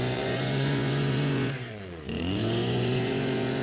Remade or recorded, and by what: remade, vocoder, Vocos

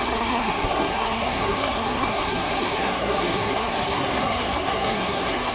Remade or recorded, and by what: remade, codec, SNAC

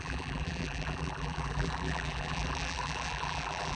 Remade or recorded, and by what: remade, vocoder, BigVGAN v2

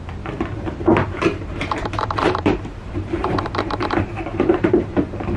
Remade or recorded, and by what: remade, vocoder, BigVGAN v2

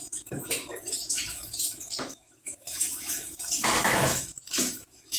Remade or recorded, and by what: remade, autoencoder, DAC-VAE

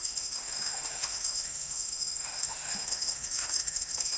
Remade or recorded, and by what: remade, autoencoder, DAC-VAE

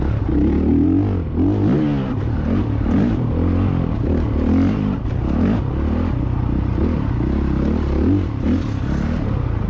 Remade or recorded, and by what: recorded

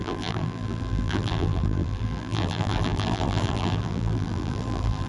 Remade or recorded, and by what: remade, vocoder, BigVGAN v2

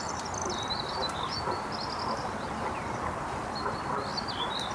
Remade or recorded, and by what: recorded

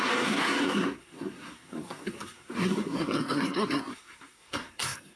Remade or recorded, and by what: remade, codec, SNAC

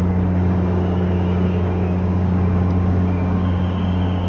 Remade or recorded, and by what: remade, codec, DAC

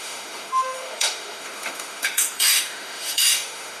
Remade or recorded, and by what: remade, autoencoder, DAC-VAE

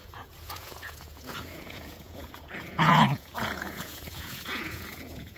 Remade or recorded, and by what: remade, vocoder, Vocos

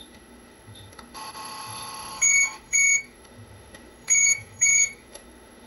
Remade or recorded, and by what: remade, autoencoder, DAC-VAE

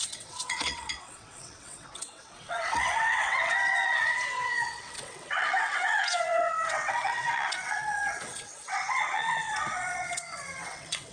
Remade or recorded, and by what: remade, vocoder, WaveNeXt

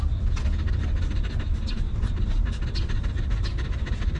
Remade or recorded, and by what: recorded